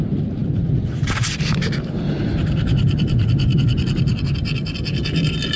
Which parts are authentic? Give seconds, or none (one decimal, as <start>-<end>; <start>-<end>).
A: 0.0-0.4; 3.8-5.6